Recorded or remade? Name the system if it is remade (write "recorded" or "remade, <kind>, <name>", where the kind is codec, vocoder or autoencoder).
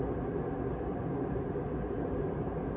recorded